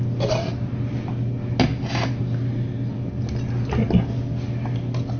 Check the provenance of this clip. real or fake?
real